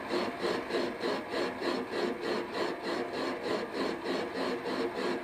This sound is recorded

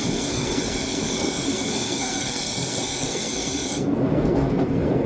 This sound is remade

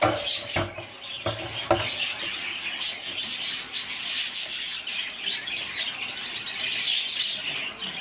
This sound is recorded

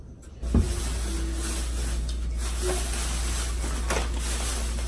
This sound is recorded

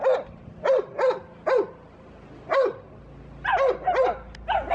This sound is recorded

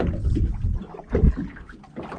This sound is recorded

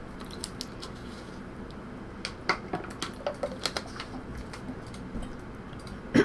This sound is recorded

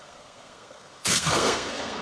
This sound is remade